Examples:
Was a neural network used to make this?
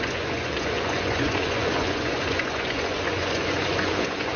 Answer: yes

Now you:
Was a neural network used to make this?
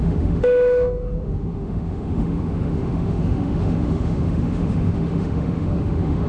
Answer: yes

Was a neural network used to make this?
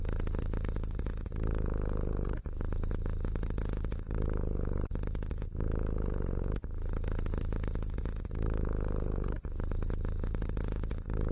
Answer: no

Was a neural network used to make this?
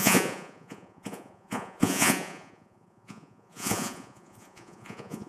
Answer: yes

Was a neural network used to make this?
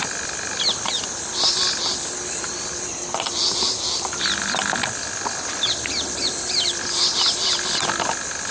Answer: no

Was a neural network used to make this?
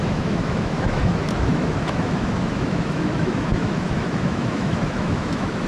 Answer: yes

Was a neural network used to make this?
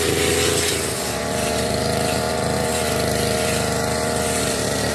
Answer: yes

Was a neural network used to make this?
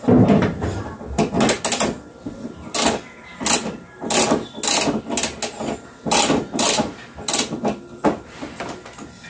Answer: no